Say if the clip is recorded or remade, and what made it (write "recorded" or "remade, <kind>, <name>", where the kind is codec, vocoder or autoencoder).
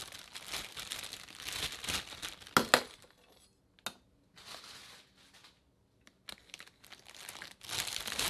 recorded